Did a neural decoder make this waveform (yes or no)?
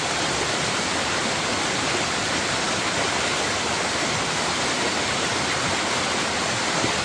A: no